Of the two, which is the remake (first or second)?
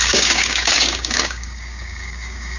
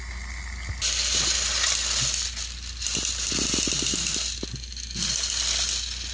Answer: first